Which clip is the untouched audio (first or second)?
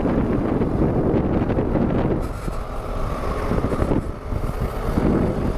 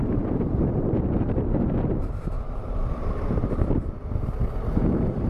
first